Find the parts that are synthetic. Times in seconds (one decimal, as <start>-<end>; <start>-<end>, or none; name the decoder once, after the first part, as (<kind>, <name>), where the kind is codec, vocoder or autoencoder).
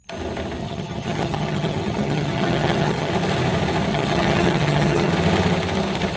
0.6-3.1 (vocoder, HiFi-GAN); 3.9-5.1